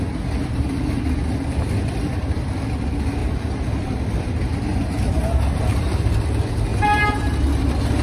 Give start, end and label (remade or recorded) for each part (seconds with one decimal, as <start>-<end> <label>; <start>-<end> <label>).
0.0-3.2 recorded; 3.2-4.1 remade; 4.1-4.7 recorded; 4.7-6.2 remade; 6.2-6.7 recorded; 6.7-7.3 remade; 7.3-8.0 recorded